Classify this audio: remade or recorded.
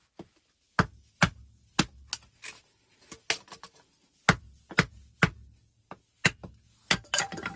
recorded